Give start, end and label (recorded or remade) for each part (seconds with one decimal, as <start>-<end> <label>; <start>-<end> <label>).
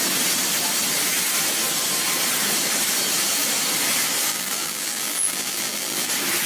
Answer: 0.0-4.3 recorded; 4.3-6.1 remade; 6.1-6.5 recorded